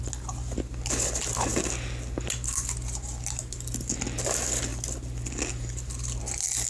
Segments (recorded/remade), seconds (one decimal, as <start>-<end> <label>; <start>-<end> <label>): 0.0-6.7 recorded